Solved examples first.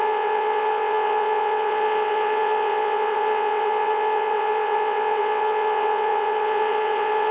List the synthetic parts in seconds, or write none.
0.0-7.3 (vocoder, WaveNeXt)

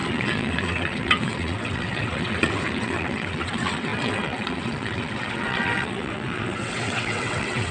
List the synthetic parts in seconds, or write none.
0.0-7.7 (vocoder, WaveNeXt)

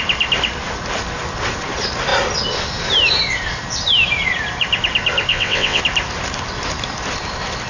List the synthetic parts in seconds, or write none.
5.3-5.8 (vocoder, WaveNeXt)

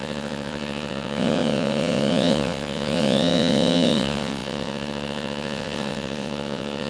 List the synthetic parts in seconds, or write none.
0.0-6.9 (vocoder, WaveNeXt)

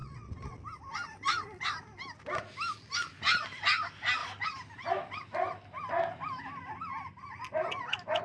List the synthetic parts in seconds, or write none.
0.0-0.6 (vocoder, WaveNeXt)

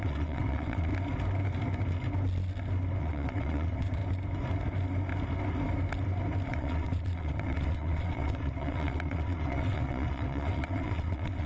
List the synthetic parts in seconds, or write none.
0.0-0.9 (vocoder, WaveNeXt); 3.0-4.0; 6.5-11.5